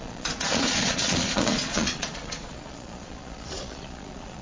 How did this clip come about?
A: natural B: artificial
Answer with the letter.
B